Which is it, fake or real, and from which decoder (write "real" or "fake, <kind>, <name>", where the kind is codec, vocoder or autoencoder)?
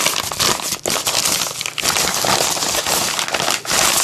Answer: real